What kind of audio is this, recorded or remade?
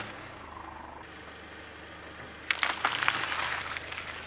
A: recorded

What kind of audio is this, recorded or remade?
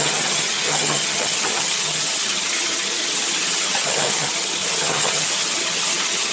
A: remade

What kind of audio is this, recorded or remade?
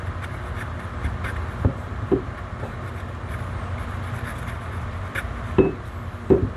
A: recorded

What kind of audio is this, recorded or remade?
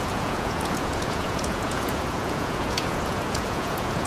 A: remade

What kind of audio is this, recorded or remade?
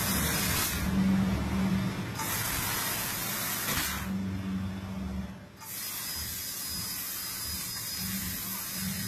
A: recorded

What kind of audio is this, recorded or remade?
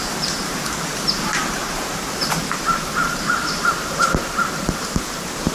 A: remade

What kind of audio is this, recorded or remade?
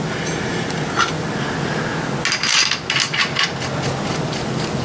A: recorded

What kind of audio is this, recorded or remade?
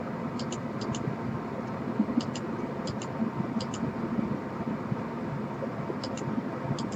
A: recorded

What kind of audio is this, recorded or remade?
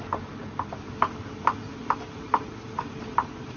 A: recorded